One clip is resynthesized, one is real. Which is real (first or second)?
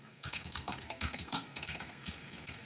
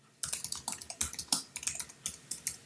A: second